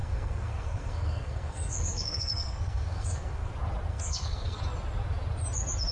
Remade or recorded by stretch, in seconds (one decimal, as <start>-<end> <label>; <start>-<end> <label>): 0.0-3.5 remade; 3.5-3.9 recorded; 3.9-4.6 remade; 4.6-5.9 recorded